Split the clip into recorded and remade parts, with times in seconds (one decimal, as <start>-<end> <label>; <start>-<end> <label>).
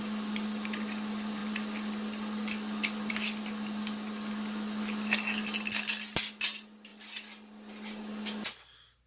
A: 0.0-9.1 recorded